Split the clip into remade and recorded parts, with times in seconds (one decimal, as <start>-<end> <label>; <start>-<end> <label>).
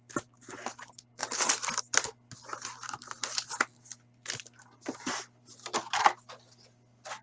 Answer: 0.0-7.2 recorded